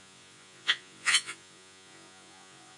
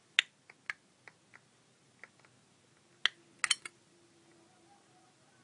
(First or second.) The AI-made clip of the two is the first